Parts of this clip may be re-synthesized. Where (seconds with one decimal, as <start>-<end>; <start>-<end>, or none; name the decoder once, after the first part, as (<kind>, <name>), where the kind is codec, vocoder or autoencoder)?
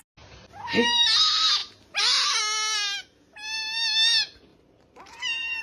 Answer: 4.5-5.6 (vocoder, BigVGAN v2)